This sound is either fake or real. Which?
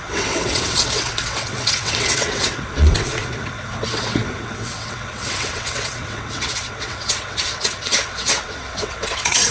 fake